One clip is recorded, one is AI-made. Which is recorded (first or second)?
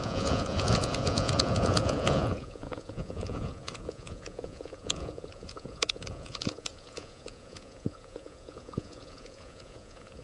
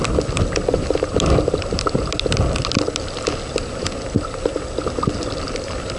second